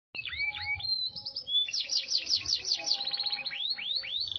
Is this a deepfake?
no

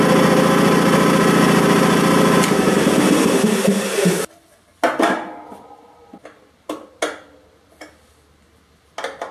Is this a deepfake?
no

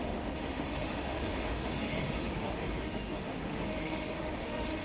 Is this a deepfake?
yes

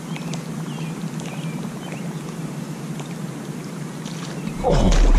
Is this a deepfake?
no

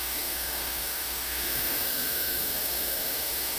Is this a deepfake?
yes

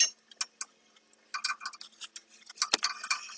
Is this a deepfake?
no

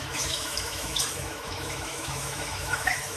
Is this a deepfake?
yes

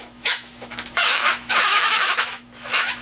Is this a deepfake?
yes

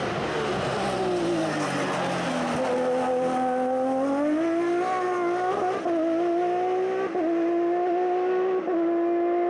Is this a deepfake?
no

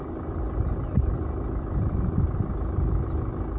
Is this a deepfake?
no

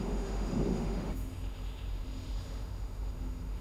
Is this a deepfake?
yes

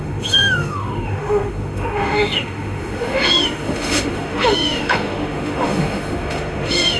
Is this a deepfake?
yes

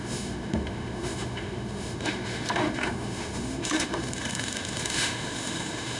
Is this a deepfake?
yes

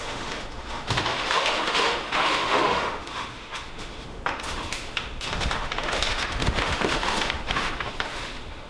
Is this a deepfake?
yes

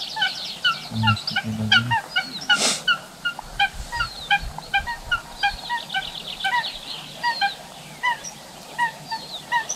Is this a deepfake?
no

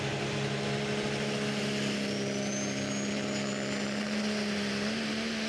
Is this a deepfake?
no